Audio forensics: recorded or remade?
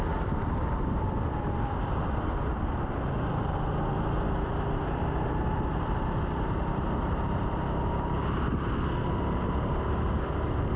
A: recorded